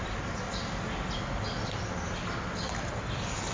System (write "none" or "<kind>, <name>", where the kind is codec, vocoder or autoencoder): none